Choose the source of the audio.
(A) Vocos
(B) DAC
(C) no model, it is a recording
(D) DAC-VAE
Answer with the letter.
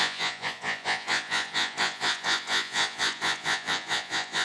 A